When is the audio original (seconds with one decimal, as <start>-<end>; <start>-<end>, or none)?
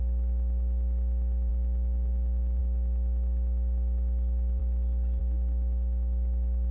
0.0-6.7